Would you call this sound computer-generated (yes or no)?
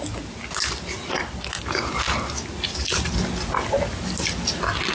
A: no